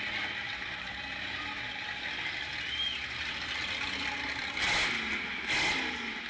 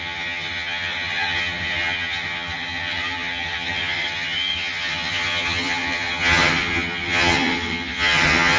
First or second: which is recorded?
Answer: first